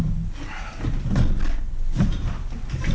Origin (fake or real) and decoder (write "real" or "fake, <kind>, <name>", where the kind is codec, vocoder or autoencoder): real